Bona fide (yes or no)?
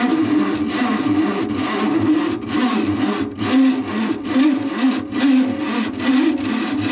yes